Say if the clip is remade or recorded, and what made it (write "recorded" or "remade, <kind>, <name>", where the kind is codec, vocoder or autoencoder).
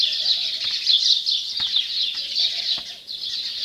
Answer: recorded